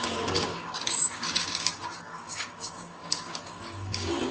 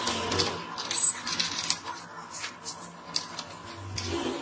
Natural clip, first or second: second